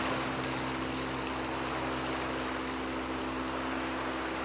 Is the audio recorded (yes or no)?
yes